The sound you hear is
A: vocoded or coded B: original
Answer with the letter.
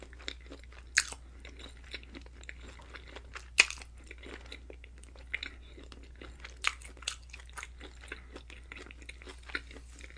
B